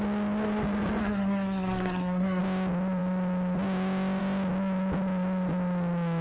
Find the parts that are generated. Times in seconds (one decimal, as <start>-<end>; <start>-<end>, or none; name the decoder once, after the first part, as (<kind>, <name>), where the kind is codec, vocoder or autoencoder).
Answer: 1.0-2.4 (codec, SNAC)